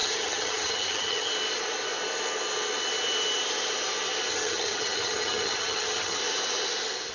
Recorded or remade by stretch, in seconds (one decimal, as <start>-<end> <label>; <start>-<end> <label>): 0.0-1.3 remade; 1.3-4.3 recorded; 4.3-6.2 remade; 6.2-7.1 recorded